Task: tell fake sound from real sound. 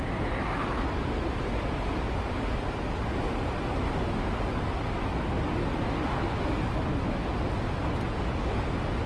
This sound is real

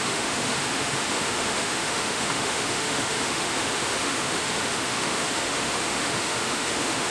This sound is fake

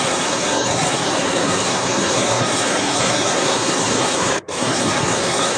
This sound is fake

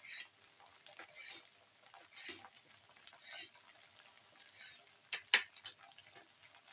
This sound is real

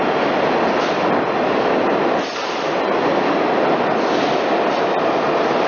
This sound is real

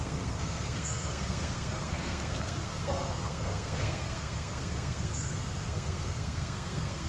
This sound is fake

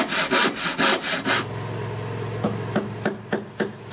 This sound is real